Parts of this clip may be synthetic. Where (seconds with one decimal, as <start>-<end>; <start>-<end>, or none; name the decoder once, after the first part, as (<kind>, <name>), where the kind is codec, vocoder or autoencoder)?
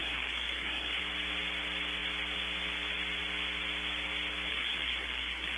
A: 0.0-1.0 (codec, SNAC); 4.5-5.6